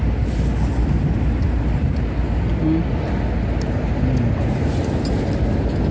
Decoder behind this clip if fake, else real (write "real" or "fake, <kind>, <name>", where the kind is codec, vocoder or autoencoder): real